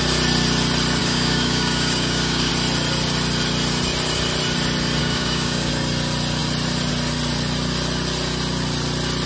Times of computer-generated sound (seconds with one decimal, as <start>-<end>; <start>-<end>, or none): 1.0-2.5; 5.0-5.7